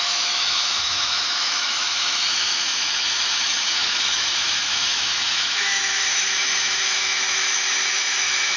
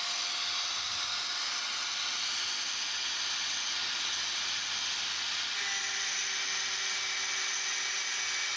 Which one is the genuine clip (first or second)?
second